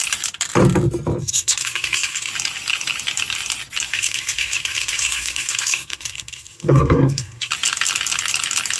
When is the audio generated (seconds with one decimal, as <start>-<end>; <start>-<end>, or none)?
1.2-2.3; 3.9-7.5